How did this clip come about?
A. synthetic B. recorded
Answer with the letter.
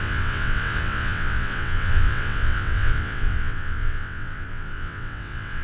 A